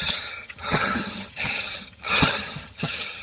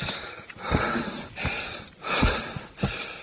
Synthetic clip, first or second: first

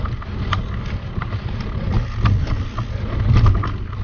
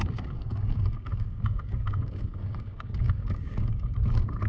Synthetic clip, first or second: second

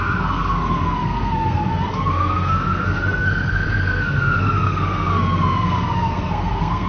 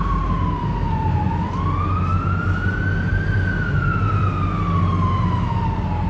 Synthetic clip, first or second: first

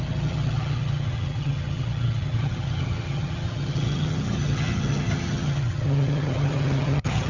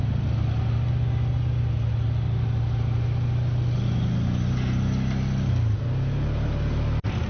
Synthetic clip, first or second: first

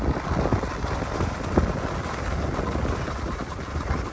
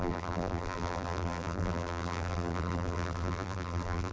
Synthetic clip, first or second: second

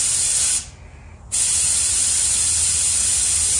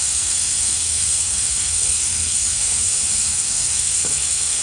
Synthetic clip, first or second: second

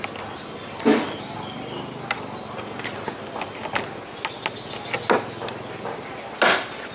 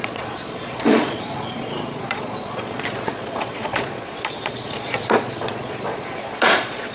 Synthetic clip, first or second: second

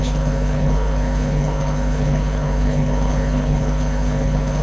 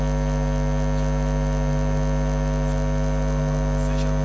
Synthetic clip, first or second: first